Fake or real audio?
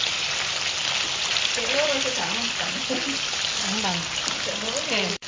real